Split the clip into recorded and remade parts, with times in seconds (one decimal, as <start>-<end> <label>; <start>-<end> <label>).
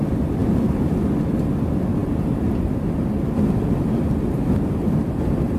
0.0-5.6 recorded